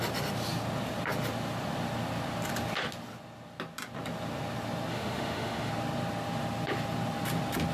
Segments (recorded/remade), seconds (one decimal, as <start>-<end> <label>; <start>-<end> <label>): 0.0-4.9 recorded; 4.9-5.7 remade; 5.7-7.7 recorded